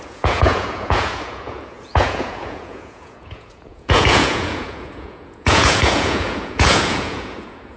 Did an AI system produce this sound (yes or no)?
yes